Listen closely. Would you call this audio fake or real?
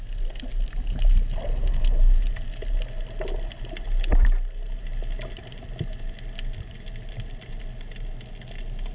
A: real